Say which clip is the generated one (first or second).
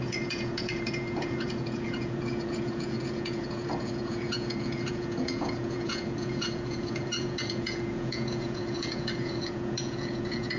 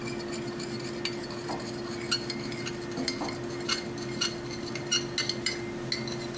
first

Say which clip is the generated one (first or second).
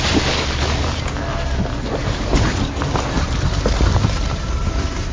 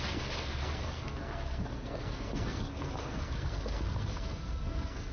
second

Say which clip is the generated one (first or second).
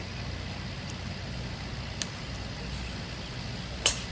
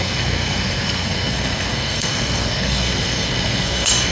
second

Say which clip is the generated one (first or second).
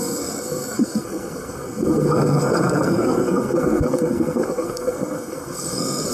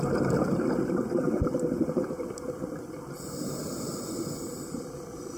first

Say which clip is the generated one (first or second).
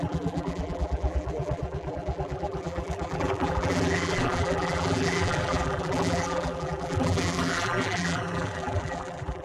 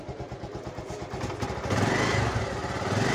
first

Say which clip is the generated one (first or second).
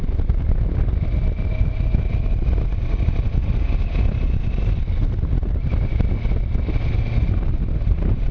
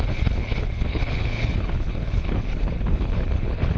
second